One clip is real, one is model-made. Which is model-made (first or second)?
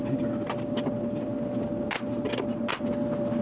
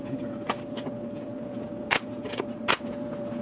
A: second